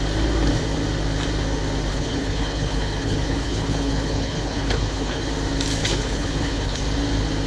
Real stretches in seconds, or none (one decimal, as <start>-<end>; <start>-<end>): 0.0-1.9; 5.3-5.8; 6.8-7.5